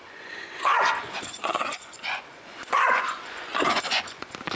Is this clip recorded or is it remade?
remade